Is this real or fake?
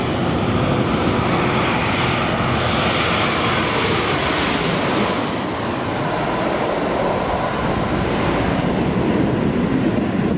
real